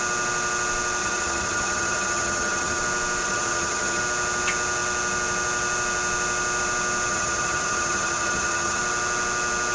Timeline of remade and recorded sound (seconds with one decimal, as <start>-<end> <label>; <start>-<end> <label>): 0.0-1.0 recorded; 1.0-2.8 remade; 2.8-3.2 recorded; 3.2-4.0 remade; 4.0-7.1 recorded; 7.1-8.8 remade; 8.8-9.7 recorded